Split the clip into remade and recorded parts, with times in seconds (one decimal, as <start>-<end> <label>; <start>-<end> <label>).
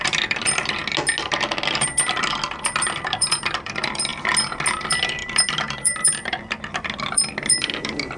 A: 0.0-0.8 remade; 0.8-1.8 recorded; 1.8-4.1 remade; 4.1-4.7 recorded; 4.7-8.2 remade